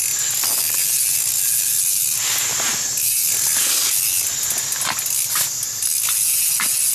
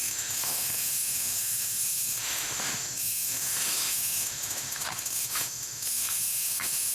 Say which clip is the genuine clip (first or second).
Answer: first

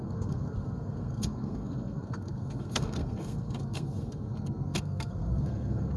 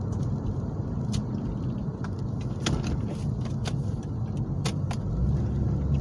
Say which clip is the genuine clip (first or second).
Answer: second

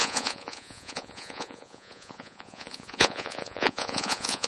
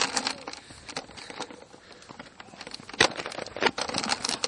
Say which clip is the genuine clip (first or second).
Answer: second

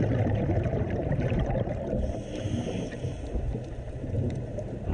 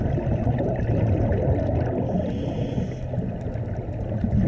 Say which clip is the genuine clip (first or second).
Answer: second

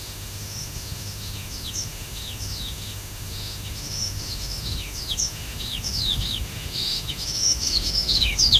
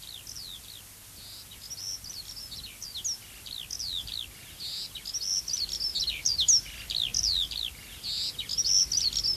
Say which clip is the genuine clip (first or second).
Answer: second